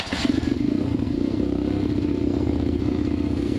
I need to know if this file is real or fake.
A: fake